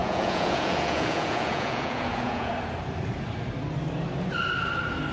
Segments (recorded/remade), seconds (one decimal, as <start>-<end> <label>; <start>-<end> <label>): 0.0-2.5 remade; 2.5-5.1 recorded